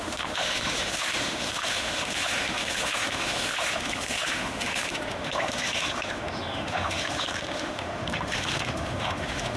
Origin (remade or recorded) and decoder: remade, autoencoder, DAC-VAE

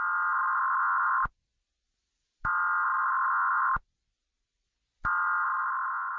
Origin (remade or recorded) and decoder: recorded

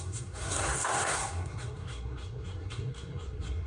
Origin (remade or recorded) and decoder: remade, codec, SNAC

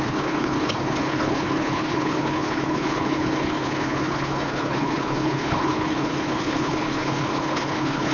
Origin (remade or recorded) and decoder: remade, codec, HILCodec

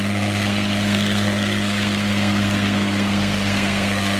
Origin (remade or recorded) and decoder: remade, codec, SNAC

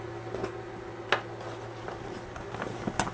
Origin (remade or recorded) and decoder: recorded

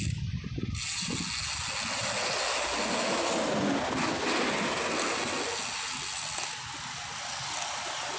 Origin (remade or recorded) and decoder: recorded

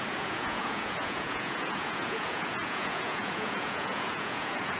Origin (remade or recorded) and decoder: remade, vocoder, Vocos